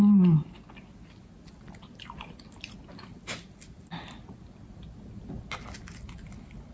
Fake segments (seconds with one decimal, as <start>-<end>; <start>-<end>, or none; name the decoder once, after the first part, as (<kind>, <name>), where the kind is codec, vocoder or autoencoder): none